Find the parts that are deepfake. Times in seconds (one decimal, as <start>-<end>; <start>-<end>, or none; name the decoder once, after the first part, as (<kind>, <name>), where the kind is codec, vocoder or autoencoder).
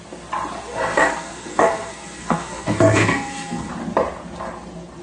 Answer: 0.7-3.7 (codec, SNAC)